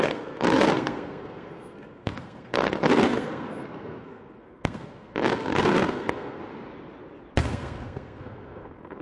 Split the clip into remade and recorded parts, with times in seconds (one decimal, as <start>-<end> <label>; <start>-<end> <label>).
0.0-6.4 remade; 6.4-7.4 recorded; 7.4-9.0 remade